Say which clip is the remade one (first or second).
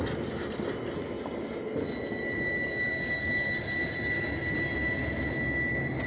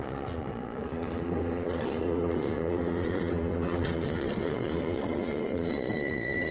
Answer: second